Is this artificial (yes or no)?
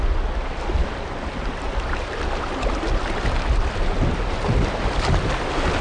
no